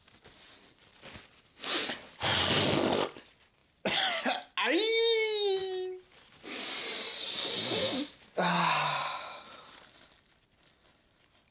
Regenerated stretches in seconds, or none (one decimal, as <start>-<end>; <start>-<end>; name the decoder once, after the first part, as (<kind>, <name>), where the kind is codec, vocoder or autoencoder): 5.6-6.3 (vocoder, BigVGAN v2)